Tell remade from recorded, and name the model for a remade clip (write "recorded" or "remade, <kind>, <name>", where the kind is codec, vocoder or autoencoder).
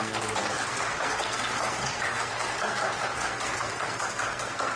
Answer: remade, codec, SNAC